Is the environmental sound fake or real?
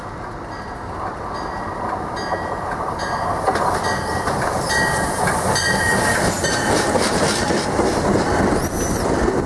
real